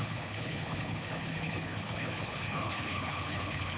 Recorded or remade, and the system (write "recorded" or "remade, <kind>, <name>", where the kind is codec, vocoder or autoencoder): remade, codec, HILCodec